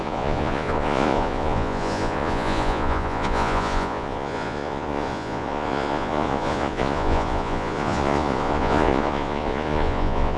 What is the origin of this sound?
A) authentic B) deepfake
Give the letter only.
B